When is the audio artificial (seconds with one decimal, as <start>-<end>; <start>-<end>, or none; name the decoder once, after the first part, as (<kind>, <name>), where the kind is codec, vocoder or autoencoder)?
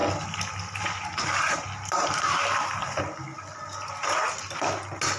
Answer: none